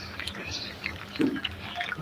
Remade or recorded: remade